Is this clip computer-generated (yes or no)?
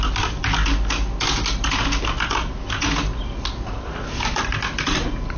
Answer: no